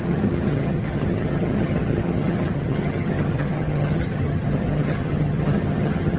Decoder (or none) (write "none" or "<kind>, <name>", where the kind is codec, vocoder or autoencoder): vocoder, HiFi-GAN